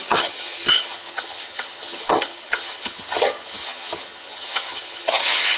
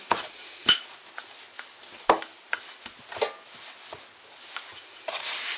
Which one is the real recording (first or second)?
second